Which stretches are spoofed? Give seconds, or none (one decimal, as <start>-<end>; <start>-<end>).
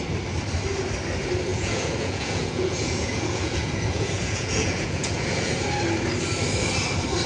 1.5-5.5